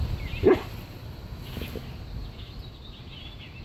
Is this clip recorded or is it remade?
recorded